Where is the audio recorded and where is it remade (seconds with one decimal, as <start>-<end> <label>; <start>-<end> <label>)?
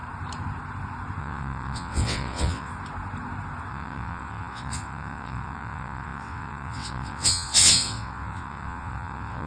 0.0-1.2 recorded; 1.2-2.7 remade; 2.7-3.7 recorded; 3.7-9.5 remade